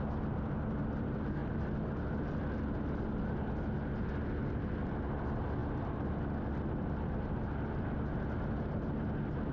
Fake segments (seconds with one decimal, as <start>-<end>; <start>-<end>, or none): none